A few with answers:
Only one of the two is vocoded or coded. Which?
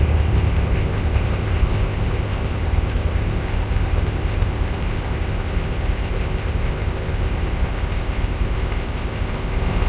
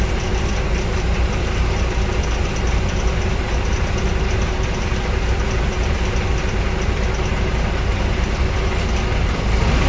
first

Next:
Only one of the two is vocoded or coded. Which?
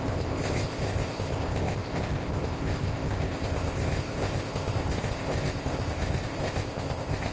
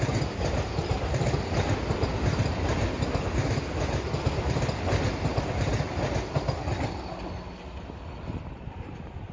first